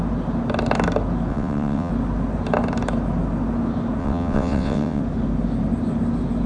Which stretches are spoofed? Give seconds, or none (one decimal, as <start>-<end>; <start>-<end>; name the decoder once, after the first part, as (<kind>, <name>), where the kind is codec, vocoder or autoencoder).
1.3-1.9 (vocoder, WaveNeXt); 4.0-5.0